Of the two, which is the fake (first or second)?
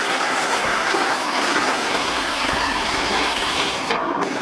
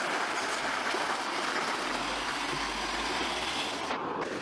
first